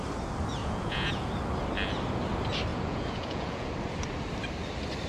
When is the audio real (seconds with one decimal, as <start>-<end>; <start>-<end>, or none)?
0.0-0.6; 1.3-2.7; 3.7-5.1